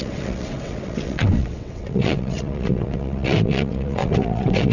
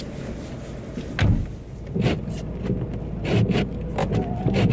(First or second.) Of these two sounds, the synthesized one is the first